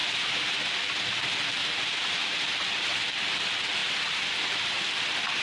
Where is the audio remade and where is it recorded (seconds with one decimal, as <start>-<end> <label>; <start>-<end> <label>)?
0.0-0.6 remade; 0.6-1.6 recorded; 1.6-2.4 remade; 2.4-3.8 recorded; 3.8-4.8 remade; 4.8-5.4 recorded